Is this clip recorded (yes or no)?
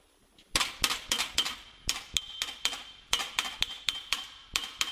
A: yes